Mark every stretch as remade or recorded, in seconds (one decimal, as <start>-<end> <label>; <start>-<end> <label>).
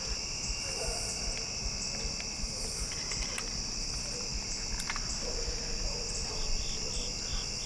0.0-7.7 recorded